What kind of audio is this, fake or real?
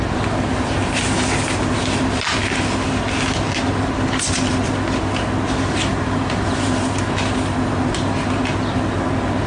real